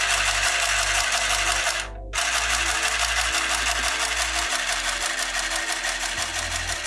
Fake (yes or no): no